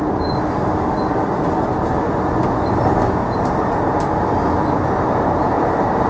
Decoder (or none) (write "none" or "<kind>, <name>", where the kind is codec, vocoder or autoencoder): none